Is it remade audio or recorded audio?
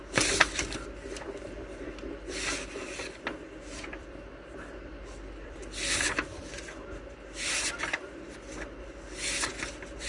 remade